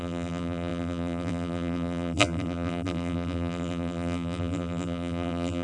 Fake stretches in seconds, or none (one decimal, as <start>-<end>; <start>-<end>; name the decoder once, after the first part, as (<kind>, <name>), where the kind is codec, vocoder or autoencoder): 0.0-5.6 (vocoder, BigVGAN v2)